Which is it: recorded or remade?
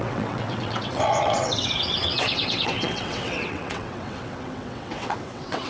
remade